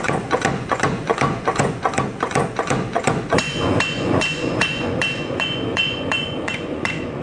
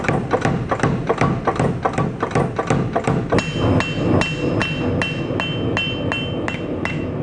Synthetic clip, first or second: first